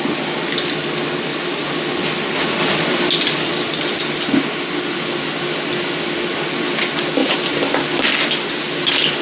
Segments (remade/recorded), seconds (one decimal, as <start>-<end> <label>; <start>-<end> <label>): 0.0-1.3 recorded; 1.3-1.8 remade; 1.8-2.6 recorded; 2.6-3.1 remade; 3.1-7.2 recorded; 7.2-8.1 remade; 8.1-9.2 recorded